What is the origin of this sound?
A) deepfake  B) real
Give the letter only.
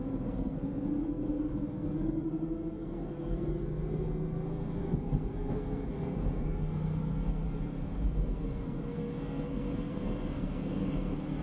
A